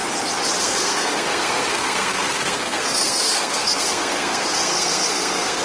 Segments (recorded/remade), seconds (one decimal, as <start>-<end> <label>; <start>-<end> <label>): 0.0-0.6 recorded; 0.6-5.6 remade